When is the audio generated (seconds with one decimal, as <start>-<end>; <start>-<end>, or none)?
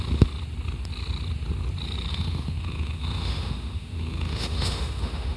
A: 2.1-5.4